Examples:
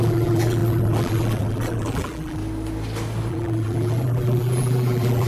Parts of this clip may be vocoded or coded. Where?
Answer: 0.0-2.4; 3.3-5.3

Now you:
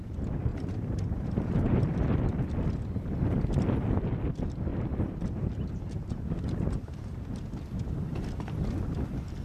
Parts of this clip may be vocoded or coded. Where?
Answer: 0.5-1.8; 4.7-7.6

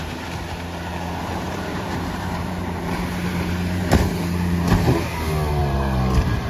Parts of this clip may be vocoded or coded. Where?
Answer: 0.9-4.8; 5.6-6.5

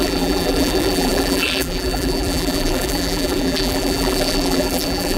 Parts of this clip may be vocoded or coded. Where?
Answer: 0.0-5.2